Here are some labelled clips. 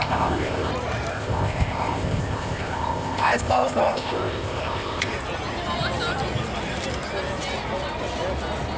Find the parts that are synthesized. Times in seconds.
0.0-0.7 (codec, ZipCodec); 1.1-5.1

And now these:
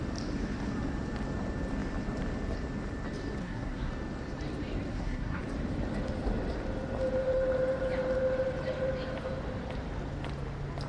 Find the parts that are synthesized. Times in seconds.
3.4-3.9 (codec, SNAC); 4.9-5.4

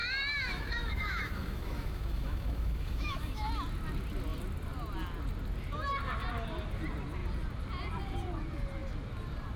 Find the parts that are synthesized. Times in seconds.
0.0-3.5 (autoencoder, DAC-VAE)

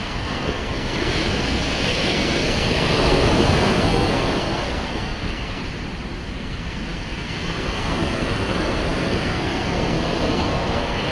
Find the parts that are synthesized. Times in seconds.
0.0-5.6 (codec, SNAC); 6.2-11.1

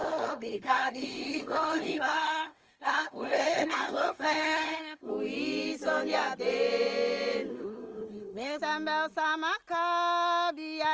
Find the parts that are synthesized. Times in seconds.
0.0-5.1 (codec, SNAC); 7.5-8.6

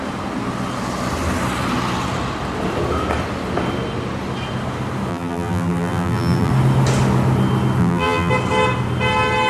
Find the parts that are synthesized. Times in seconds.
5.1-6.5 (vocoder, BigVGAN v2); 7.8-8.3